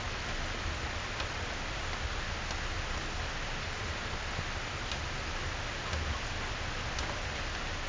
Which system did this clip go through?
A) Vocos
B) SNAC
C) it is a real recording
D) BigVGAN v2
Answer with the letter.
C